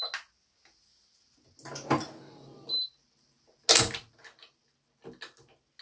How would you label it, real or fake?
real